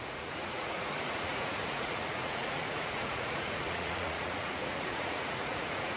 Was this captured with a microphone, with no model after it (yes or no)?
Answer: no